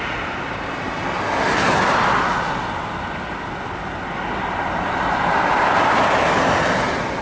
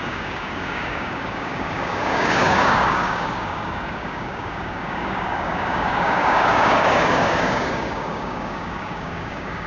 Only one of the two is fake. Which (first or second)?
second